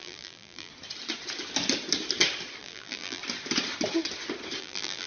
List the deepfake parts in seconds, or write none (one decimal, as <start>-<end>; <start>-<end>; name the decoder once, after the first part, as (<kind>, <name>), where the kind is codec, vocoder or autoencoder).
0.0-0.7 (vocoder, BigVGAN v2); 2.6-3.2; 4.6-5.1